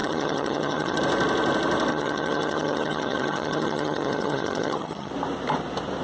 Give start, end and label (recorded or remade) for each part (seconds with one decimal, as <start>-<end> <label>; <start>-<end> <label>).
0.0-1.0 remade; 1.0-1.9 recorded; 1.9-5.1 remade; 5.1-6.0 recorded